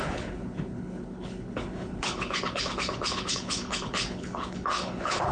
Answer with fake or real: fake